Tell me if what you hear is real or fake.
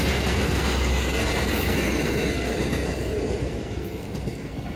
fake